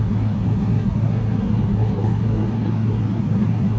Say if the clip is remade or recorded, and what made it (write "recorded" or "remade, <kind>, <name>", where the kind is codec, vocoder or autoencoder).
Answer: remade, codec, SNAC